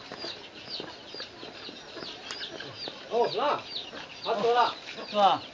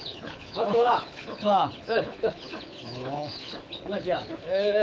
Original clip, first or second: first